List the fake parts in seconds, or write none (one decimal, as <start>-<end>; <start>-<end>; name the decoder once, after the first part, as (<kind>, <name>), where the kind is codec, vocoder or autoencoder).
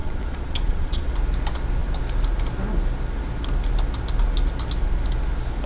0.0-1.1 (vocoder, Vocos)